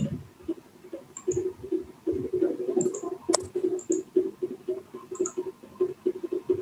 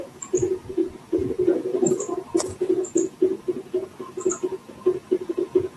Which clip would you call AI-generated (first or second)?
second